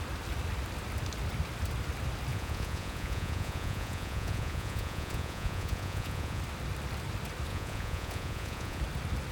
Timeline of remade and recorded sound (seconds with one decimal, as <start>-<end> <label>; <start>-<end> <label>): 0.0-2.3 recorded; 2.3-6.4 remade; 6.4-7.5 recorded; 7.5-8.8 remade; 8.8-9.3 recorded